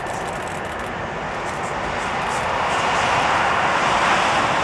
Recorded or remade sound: recorded